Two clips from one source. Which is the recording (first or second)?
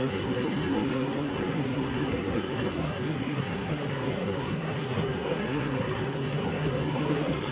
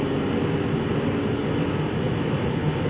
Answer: second